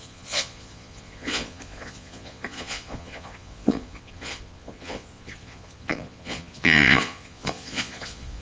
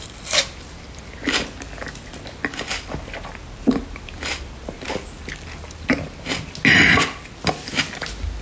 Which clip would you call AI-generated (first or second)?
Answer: first